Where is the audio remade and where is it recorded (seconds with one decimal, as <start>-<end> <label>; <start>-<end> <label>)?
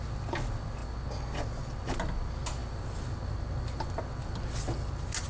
0.0-5.3 recorded